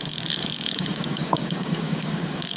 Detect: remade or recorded remade